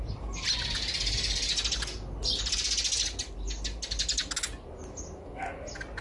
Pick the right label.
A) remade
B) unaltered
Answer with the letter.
B